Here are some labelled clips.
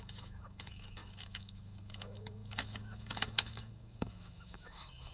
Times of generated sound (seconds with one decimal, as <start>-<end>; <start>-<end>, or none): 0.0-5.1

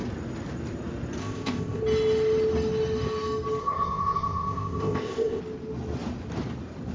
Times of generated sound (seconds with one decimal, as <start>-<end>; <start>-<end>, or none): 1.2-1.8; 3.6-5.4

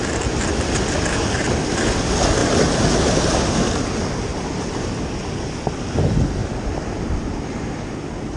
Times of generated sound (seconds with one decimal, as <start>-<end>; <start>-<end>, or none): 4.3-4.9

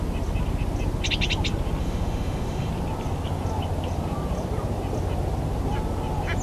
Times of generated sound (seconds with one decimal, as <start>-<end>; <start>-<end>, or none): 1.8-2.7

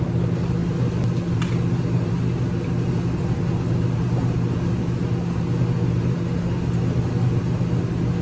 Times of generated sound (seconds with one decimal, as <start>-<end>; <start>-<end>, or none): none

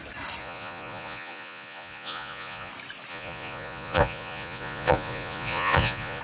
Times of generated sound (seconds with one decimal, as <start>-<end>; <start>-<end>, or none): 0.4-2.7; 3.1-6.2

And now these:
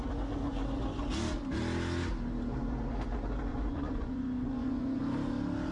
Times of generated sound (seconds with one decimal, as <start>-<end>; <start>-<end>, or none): 3.5-5.0